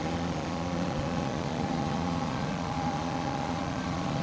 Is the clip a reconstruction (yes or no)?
yes